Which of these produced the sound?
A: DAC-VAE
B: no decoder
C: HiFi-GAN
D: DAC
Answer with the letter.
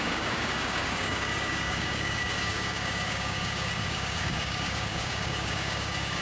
D